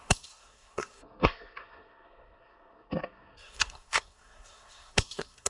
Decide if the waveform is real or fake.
fake